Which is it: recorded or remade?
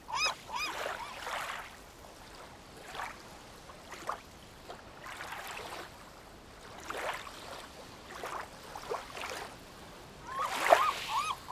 recorded